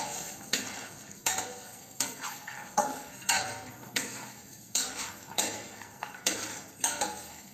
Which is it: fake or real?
fake